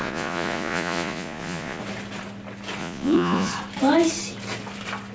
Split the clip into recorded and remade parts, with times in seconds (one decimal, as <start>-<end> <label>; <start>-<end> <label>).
0.0-1.8 remade; 1.8-2.8 recorded; 2.8-3.5 remade; 3.5-5.1 recorded